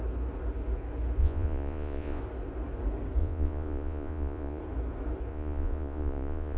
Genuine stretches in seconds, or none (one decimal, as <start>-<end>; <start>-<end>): 0.0-1.2; 2.2-3.2; 4.6-5.3